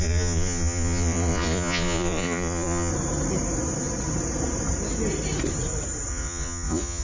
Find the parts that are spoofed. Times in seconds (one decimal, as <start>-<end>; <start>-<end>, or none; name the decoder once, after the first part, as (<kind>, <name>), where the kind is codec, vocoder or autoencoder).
0.0-2.9 (vocoder, Vocos); 6.1-7.0